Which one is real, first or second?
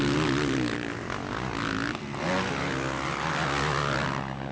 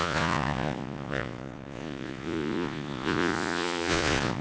first